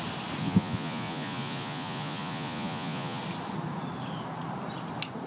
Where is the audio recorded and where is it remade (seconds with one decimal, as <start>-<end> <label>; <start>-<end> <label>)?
0.0-0.4 recorded; 0.4-3.2 remade; 3.2-5.3 recorded